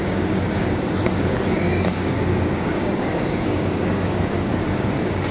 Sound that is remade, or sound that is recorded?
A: remade